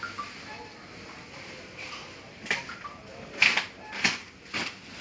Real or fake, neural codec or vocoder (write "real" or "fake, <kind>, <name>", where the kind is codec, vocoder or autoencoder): real